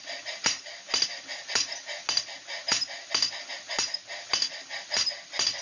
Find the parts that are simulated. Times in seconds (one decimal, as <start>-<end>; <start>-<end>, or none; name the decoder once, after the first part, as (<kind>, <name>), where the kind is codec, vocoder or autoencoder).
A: none